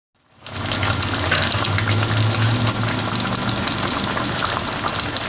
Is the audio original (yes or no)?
yes